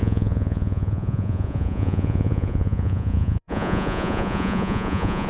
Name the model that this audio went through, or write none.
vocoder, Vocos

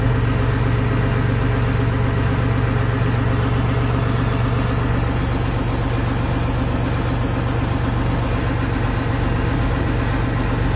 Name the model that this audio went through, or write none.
none